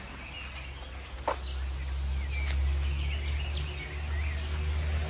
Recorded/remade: recorded